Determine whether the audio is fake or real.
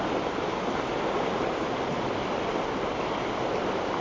real